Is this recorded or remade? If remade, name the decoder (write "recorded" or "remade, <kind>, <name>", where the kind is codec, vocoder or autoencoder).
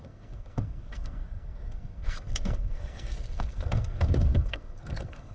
remade, codec, SNAC